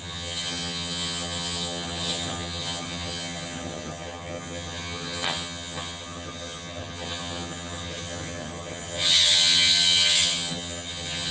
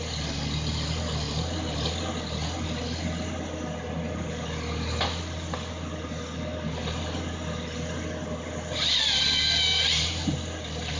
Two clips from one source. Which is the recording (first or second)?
second